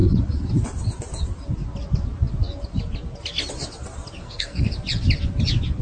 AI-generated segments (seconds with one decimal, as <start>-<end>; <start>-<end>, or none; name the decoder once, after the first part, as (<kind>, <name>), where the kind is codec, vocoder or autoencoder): 4.2-4.7 (codec, SNAC)